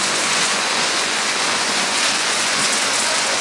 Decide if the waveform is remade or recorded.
remade